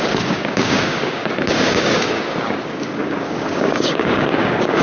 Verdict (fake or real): fake